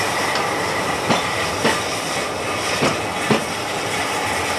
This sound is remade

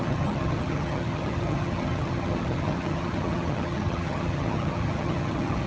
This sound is remade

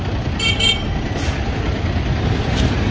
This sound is recorded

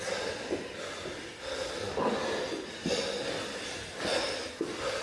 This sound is recorded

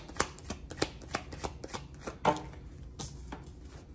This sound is recorded